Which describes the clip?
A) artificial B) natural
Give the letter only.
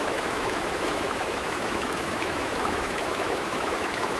A